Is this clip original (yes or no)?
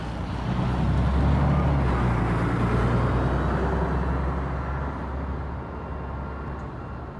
yes